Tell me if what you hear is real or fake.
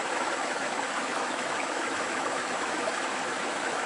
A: fake